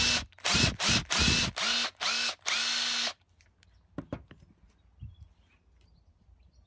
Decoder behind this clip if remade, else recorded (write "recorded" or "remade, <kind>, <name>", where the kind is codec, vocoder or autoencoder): recorded